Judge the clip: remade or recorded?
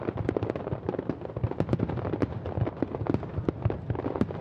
recorded